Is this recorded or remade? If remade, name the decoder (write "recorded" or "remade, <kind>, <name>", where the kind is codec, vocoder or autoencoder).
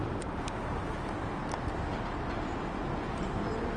recorded